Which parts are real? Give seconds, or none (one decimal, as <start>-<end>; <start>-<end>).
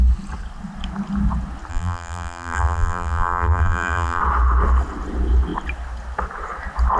0.0-1.7; 4.2-7.0